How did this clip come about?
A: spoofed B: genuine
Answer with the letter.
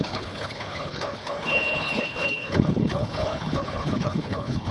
A